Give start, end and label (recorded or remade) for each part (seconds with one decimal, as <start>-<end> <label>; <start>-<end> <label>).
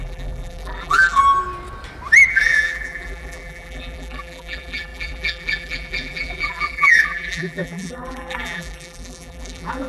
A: 0.0-1.2 remade; 1.2-2.3 recorded; 2.3-9.9 remade